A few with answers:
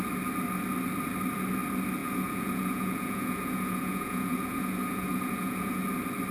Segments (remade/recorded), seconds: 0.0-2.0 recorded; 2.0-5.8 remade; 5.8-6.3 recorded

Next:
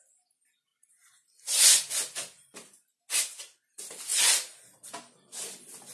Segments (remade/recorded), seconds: 0.0-5.9 recorded

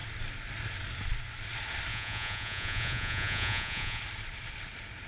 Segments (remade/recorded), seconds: 0.0-1.9 recorded; 1.9-4.0 remade; 4.0-5.1 recorded

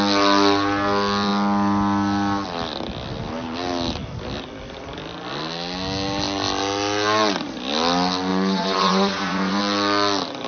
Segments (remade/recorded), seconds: 0.0-8.3 recorded; 8.3-9.6 remade; 9.6-10.5 recorded

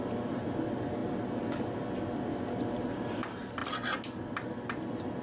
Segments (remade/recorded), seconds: 0.0-5.2 recorded

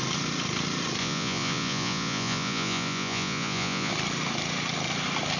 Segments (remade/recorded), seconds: 0.0-1.0 recorded; 1.0-3.9 remade; 3.9-5.4 recorded